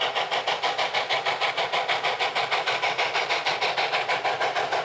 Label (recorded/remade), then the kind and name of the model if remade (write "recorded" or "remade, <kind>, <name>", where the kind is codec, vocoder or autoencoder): recorded